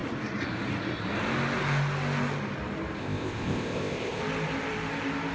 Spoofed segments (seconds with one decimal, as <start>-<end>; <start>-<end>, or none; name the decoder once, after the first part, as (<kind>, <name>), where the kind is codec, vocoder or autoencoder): 3.0-4.2 (codec, ZipCodec)